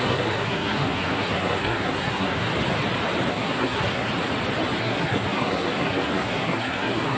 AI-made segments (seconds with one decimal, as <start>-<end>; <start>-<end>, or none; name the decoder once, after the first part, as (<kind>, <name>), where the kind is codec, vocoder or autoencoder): 0.0-2.5 (codec, SNAC); 3.3-4.1; 4.8-7.2